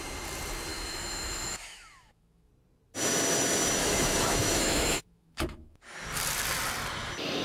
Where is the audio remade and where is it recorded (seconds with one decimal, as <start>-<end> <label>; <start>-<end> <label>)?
0.0-0.7 recorded; 0.7-2.5 remade; 2.5-3.8 recorded; 3.8-5.8 remade; 5.8-7.4 recorded